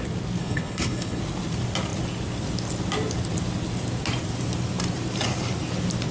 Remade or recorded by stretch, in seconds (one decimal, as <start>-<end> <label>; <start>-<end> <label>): 0.0-0.4 recorded; 0.4-1.2 remade; 1.2-6.1 recorded